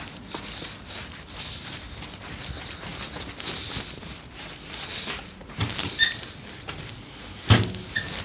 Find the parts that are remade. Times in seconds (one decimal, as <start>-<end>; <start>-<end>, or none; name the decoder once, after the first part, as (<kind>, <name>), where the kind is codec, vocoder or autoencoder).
1.0-1.7 (vocoder, BigVGAN v2)